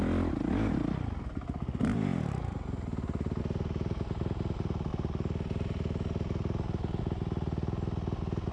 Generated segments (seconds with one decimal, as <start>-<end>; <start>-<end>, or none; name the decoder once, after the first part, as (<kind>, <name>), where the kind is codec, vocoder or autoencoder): 2.1-3.4 (vocoder, BigVGAN v2)